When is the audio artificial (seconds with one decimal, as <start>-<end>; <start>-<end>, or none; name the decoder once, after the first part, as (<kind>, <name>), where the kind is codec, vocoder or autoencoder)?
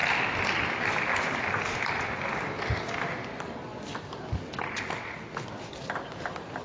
none